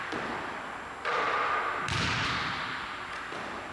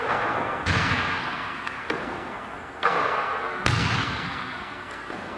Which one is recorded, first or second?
first